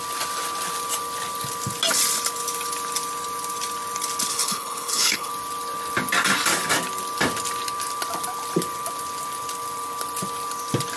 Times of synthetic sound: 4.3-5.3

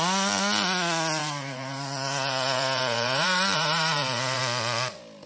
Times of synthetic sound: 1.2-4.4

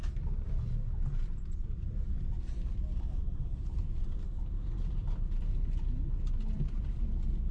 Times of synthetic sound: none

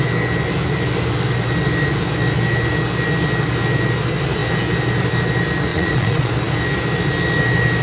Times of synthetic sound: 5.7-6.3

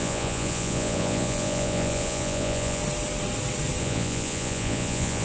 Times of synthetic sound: 0.0-2.8; 3.8-5.2